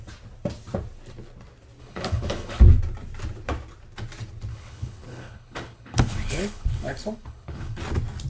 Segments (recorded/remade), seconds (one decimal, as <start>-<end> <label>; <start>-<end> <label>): 0.0-1.8 recorded; 1.8-2.6 remade; 2.6-4.5 recorded; 4.5-7.8 remade; 7.8-8.3 recorded